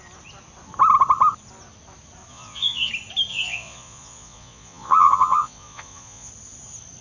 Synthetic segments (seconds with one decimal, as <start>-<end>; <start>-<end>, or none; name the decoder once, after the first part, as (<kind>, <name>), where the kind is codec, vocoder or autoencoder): 2.3-2.9 (vocoder, Vocos); 3.3-6.3